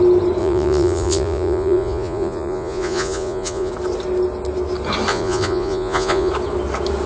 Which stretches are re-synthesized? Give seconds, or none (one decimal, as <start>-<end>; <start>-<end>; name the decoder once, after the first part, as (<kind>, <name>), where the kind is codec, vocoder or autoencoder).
0.4-3.7 (vocoder, Vocos); 5.1-6.3